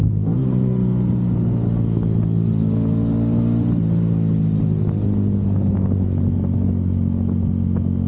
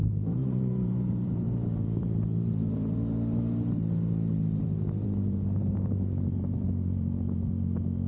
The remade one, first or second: second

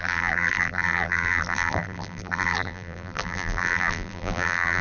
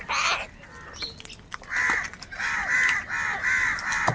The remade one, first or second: first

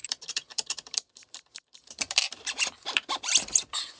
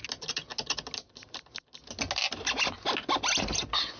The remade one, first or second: first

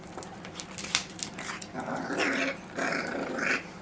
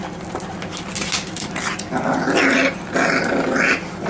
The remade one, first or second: first